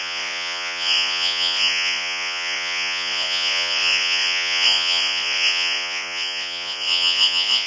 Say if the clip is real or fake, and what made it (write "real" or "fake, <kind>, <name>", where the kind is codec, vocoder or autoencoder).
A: fake, vocoder, Vocos